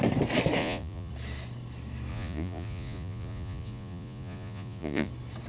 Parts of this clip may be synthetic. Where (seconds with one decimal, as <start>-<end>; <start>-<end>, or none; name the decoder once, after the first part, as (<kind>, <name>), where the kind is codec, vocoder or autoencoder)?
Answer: 0.6-1.1 (vocoder, Vocos); 2.1-5.1